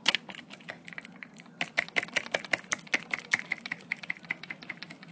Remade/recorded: recorded